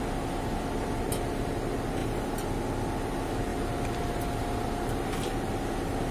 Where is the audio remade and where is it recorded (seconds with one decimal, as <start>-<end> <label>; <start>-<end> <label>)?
0.0-6.1 recorded